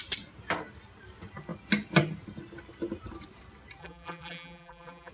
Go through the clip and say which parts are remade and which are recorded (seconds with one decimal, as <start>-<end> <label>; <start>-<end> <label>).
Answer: 0.0-3.8 recorded; 3.8-5.1 remade